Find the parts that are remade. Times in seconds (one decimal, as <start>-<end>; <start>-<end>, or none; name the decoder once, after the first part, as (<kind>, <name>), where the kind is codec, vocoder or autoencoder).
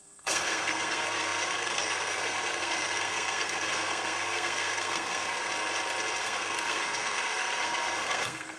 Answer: 0.0-5.5 (codec, SNAC); 6.2-8.6